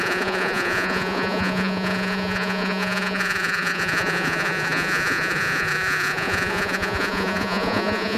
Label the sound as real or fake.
fake